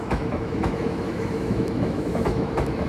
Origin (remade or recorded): remade